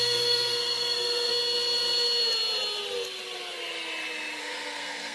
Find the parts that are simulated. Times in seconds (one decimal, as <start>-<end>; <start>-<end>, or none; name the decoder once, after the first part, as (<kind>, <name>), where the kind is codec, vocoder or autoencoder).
0.0-1.3 (codec, SNAC); 4.4-5.1